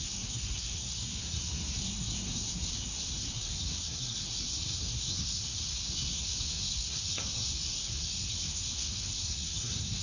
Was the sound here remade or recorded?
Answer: remade